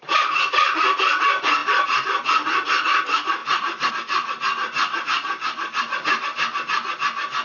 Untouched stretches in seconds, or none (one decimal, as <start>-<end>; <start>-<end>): 0.0-3.4; 3.9-4.6; 6.2-7.4